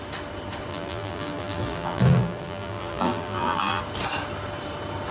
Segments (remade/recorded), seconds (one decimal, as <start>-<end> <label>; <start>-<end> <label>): 0.0-0.7 recorded; 0.7-3.8 remade; 3.8-5.1 recorded

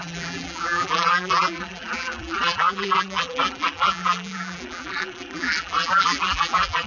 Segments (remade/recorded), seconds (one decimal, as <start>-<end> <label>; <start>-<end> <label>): 0.0-6.9 remade

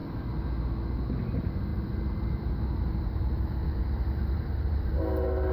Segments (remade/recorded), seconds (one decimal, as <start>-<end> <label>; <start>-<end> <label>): 0.0-1.7 recorded; 1.7-5.0 remade; 5.0-5.5 recorded